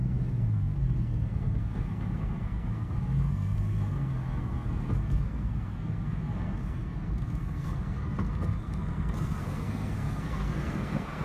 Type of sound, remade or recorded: remade